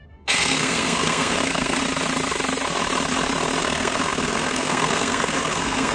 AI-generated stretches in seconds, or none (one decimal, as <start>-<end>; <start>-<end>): 0.0-1.8; 3.6-5.9